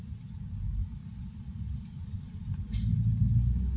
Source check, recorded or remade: recorded